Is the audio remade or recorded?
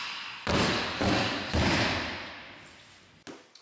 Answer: recorded